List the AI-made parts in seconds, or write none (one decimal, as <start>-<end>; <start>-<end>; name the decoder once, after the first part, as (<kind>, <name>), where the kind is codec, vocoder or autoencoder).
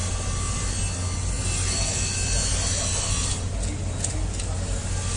none